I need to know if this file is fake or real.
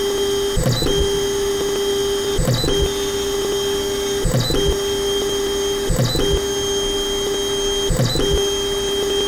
real